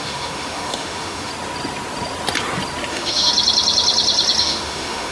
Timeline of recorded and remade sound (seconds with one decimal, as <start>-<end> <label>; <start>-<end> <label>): 0.0-1.3 remade; 1.3-2.9 recorded; 2.9-3.3 remade; 3.3-4.4 recorded; 4.4-5.1 remade